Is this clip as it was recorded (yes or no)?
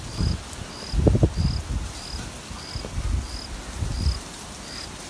yes